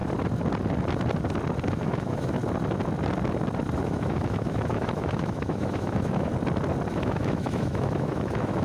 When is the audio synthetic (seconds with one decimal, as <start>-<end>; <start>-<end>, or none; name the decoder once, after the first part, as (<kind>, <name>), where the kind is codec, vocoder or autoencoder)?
1.7-2.4 (autoencoder, DAC-VAE); 3.8-6.3; 6.9-8.6